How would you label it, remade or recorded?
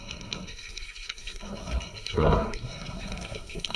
remade